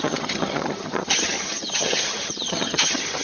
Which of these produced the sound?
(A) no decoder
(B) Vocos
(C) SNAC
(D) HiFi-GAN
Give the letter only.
D